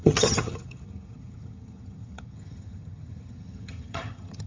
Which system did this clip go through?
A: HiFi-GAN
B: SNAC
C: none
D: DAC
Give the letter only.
A